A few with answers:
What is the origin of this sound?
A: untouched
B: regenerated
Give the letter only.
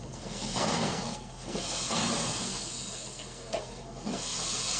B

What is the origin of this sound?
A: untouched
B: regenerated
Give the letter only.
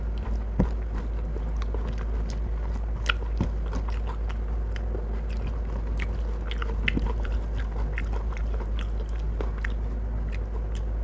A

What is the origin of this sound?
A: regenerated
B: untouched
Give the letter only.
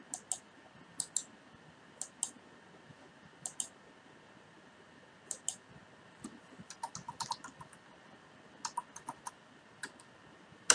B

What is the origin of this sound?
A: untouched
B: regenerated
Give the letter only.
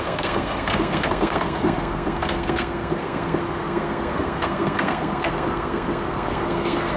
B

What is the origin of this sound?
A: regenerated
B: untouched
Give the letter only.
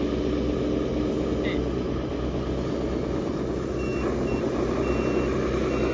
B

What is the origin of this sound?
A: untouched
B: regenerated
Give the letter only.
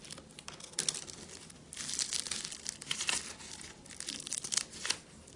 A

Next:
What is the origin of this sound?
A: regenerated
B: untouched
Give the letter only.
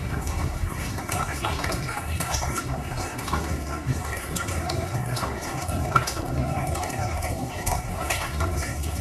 A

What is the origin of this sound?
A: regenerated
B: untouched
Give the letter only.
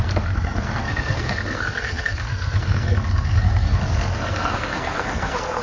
A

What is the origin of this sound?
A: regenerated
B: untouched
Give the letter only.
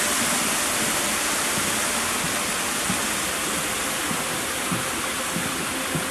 B